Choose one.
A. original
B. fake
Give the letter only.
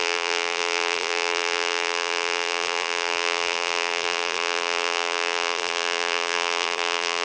B